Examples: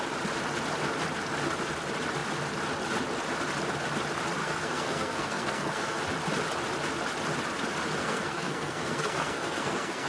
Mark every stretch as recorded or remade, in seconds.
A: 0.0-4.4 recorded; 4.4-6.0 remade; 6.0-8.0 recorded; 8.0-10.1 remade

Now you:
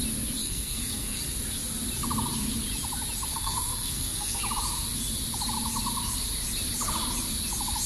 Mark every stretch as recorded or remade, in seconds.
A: 0.0-0.4 recorded; 0.4-1.2 remade; 1.2-3.3 recorded; 3.3-4.4 remade; 4.4-7.9 recorded